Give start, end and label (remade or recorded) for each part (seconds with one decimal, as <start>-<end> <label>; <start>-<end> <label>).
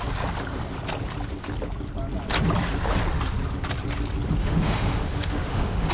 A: 0.0-4.4 recorded; 4.4-5.9 remade